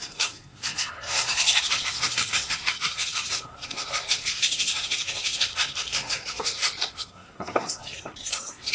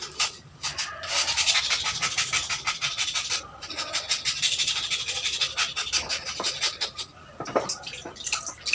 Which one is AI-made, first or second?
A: first